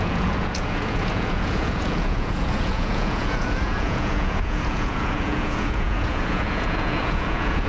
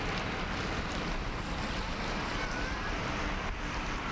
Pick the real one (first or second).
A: second